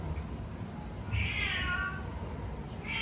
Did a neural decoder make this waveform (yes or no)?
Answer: no